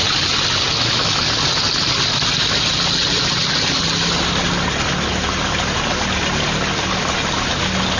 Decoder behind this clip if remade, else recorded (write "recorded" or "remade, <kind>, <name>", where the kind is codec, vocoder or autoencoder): recorded